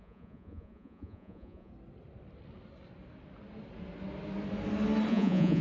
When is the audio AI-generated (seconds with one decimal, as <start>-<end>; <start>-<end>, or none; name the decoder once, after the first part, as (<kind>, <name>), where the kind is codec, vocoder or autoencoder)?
0.0-1.7 (vocoder, Vocos); 5.1-5.6